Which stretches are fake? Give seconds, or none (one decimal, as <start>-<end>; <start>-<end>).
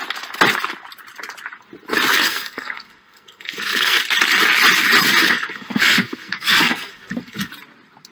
2.1-4.0; 5.2-7.5